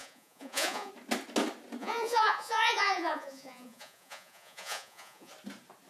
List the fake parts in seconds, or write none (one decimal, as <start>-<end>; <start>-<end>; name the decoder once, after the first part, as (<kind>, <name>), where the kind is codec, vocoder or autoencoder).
0.0-0.9 (vocoder, Vocos); 1.8-5.3